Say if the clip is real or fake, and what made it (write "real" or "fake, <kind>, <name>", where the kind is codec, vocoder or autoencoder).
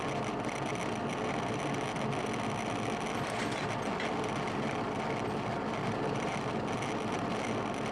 real